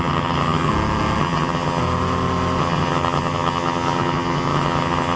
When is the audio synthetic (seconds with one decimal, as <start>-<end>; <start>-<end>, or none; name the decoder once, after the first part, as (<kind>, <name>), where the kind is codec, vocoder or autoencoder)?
0.0-0.7 (vocoder, HiFi-GAN); 1.2-1.8; 2.6-5.2

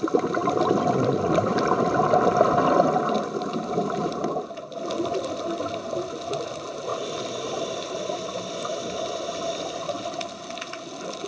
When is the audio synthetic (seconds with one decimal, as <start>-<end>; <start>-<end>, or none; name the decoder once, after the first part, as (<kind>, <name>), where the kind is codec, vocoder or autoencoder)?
none

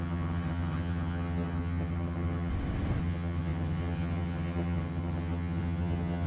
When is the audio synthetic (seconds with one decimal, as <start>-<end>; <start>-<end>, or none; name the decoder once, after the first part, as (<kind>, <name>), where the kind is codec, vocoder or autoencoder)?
0.0-2.5 (vocoder, HiFi-GAN); 3.0-6.3

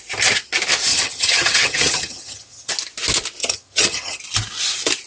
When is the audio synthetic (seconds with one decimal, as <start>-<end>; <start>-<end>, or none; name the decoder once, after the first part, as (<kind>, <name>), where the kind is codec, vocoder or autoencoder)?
0.9-2.7 (vocoder, HiFi-GAN); 3.4-4.2

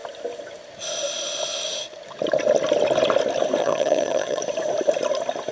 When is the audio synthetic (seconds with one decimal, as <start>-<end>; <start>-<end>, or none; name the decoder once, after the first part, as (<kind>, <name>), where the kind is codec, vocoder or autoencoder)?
3.6-4.4 (vocoder, HiFi-GAN)

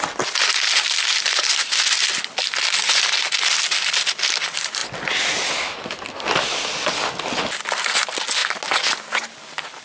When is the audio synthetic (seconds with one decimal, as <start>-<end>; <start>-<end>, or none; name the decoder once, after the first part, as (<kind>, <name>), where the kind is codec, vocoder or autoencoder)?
none

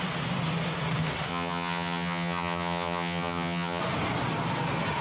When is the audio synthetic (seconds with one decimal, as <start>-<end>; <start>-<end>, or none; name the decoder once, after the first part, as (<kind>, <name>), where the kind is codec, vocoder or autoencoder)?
1.3-3.8 (vocoder, HiFi-GAN)

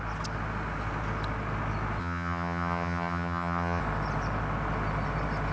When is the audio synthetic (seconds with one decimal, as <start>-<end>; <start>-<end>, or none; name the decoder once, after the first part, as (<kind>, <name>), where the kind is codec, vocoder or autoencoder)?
2.0-3.8 (vocoder, HiFi-GAN)